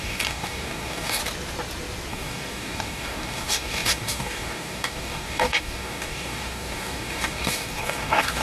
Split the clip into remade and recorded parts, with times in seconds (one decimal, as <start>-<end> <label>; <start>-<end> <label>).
0.0-1.2 remade; 1.2-2.1 recorded; 2.1-8.4 remade